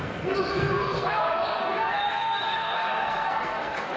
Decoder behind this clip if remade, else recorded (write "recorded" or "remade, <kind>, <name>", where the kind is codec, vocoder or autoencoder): remade, codec, SNAC